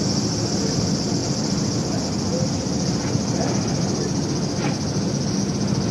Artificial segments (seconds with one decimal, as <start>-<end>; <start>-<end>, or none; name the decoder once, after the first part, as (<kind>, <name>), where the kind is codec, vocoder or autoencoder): none